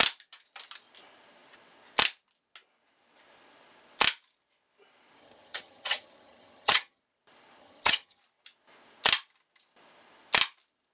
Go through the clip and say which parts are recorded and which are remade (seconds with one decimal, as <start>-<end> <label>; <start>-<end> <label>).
0.0-5.2 recorded; 5.2-7.0 remade; 7.0-7.6 recorded; 7.6-8.2 remade; 8.2-10.9 recorded